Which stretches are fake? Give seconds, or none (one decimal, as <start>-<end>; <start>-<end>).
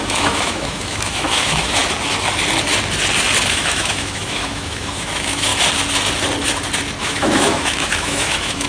0.0-1.8; 3.5-5.5; 7.0-8.7